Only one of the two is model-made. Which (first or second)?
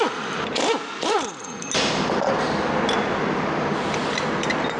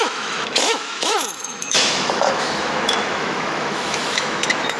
second